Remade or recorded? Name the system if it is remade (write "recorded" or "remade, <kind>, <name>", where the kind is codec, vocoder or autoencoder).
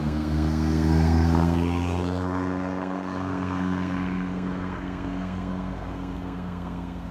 remade, codec, SNAC